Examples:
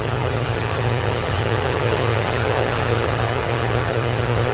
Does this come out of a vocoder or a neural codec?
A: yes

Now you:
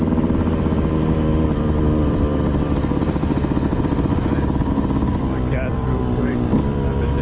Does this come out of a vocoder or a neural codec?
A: yes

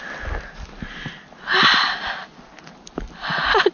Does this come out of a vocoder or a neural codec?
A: no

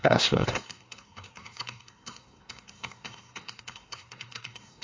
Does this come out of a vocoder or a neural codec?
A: yes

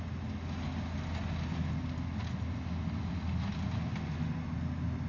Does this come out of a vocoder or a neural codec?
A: no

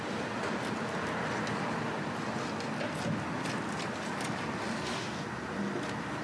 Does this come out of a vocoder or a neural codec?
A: no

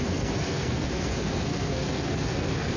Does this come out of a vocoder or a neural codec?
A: yes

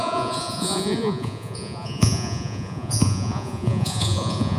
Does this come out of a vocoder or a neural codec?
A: yes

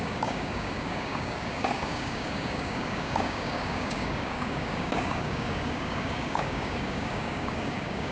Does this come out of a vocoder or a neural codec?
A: yes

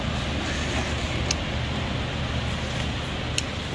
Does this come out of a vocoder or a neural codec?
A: no